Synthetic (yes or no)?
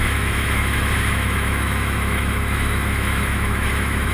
yes